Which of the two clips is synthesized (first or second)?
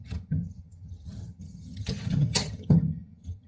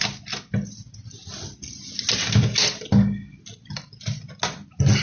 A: first